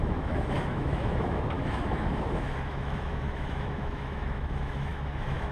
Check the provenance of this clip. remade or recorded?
remade